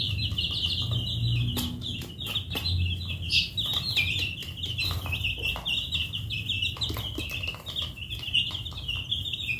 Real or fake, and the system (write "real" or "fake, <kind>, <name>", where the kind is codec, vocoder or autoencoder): real